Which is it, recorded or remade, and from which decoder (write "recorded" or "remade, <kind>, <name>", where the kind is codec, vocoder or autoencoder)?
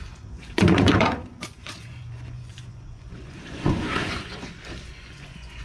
remade, vocoder, Vocos